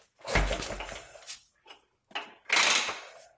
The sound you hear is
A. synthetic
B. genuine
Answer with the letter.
B